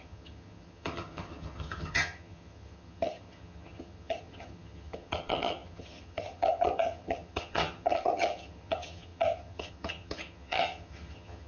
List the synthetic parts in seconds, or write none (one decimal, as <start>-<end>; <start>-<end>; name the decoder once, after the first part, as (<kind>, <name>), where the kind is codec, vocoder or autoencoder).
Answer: 0.0-11.5 (vocoder, HiFi-GAN)